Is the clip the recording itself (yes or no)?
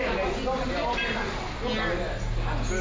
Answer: yes